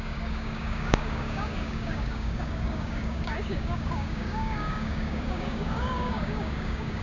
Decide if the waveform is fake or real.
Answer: fake